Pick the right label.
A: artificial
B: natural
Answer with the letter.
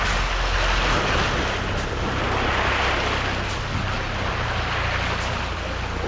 B